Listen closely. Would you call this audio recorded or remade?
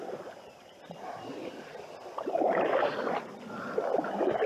recorded